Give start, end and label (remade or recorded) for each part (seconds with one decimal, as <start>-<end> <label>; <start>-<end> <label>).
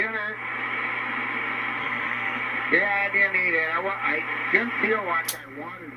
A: 0.0-1.8 recorded; 1.8-2.4 remade; 2.4-6.0 recorded